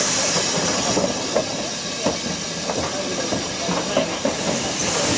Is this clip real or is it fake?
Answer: real